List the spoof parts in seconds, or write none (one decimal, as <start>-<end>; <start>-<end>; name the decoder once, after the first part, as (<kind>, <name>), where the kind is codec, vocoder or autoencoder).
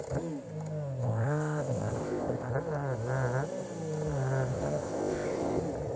1.0-2.5 (codec, ZipCodec); 4.5-5.6